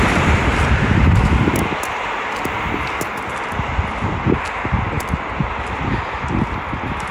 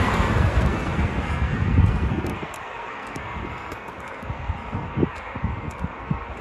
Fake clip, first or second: second